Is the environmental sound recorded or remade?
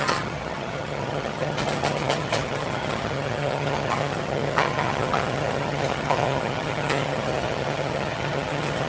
remade